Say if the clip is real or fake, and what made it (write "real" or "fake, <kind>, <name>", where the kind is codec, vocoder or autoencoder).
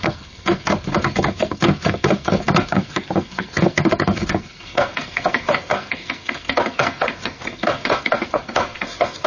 fake, codec, SNAC